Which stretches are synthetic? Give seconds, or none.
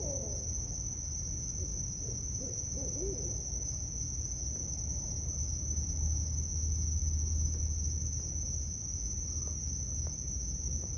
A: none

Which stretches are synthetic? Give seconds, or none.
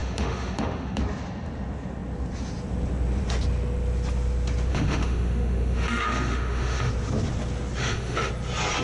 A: 0.0-1.0; 4.7-6.9; 7.8-8.3